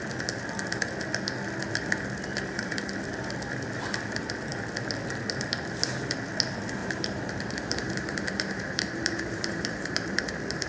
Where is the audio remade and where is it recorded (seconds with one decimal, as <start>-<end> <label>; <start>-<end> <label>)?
0.0-2.3 recorded; 2.3-2.8 remade; 2.8-6.8 recorded; 6.8-10.2 remade; 10.2-10.7 recorded